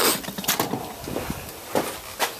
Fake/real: real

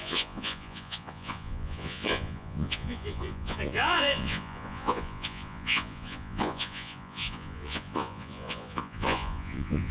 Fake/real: fake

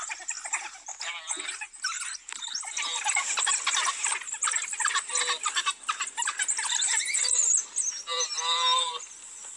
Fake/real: real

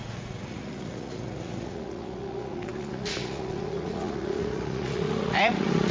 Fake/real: fake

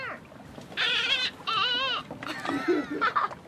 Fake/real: real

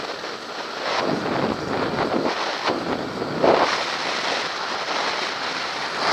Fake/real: real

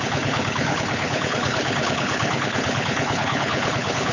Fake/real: fake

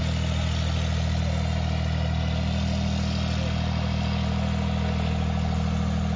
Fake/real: real